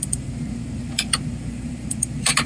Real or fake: fake